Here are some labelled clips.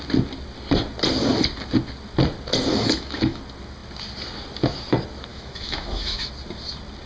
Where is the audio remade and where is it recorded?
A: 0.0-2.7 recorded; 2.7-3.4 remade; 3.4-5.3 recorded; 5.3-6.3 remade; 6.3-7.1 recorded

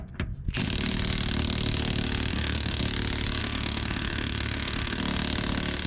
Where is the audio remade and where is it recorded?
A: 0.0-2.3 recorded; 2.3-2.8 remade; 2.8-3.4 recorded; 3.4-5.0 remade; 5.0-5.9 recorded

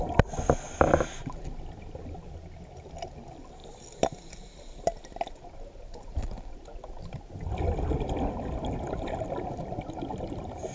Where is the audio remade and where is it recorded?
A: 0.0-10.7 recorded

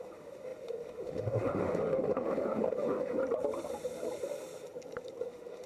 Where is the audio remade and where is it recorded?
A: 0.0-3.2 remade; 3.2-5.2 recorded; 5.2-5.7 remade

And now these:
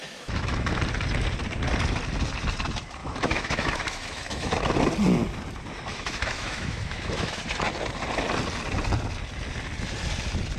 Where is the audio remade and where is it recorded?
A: 0.0-0.8 remade; 0.8-3.0 recorded; 3.0-4.6 remade; 4.6-5.9 recorded; 5.9-7.4 remade; 7.4-10.6 recorded

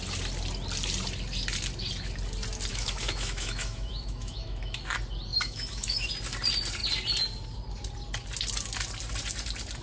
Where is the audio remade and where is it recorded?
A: 0.0-2.7 recorded; 2.7-4.8 remade; 4.8-5.3 recorded; 5.3-6.1 remade; 6.1-9.8 recorded